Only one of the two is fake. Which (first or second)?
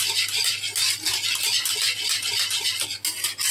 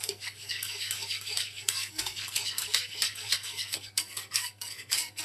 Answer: second